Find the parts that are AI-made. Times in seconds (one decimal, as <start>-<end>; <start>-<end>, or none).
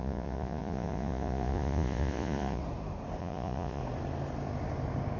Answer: 0.0-2.6; 3.2-3.8